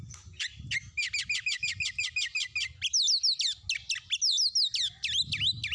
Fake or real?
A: real